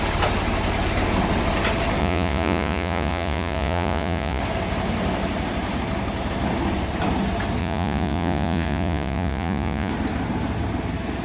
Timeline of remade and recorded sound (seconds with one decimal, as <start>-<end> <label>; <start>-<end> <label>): 0.0-2.0 recorded; 2.0-4.4 remade; 4.4-7.6 recorded; 7.6-9.9 remade; 9.9-11.2 recorded